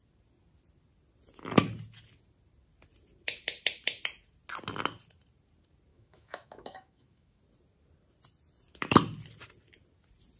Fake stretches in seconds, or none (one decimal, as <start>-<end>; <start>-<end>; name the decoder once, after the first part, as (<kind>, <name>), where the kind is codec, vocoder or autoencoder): 5.9-7.4 (autoencoder, DAC-VAE)